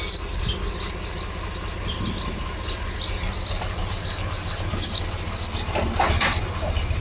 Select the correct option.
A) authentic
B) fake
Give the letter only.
A